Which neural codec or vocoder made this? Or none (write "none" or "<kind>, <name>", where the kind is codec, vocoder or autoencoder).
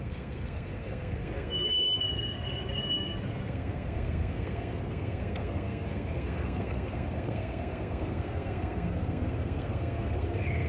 codec, SNAC